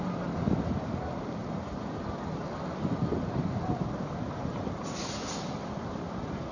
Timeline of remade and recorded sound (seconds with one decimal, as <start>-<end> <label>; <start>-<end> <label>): 0.0-6.5 recorded